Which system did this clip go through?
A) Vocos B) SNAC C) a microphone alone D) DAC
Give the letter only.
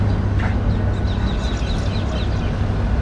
C